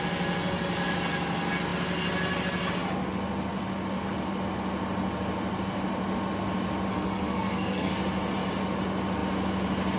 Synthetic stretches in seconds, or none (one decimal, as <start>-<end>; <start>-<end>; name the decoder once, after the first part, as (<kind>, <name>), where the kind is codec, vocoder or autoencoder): 6.9-7.9 (codec, SNAC)